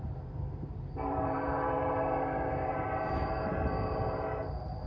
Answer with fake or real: fake